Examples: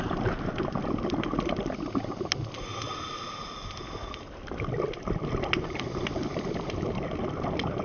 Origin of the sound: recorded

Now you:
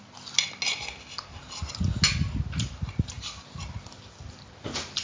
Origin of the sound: recorded